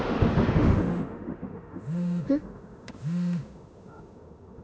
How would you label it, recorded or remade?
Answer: remade